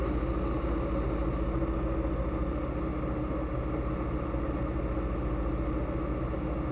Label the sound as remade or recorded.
recorded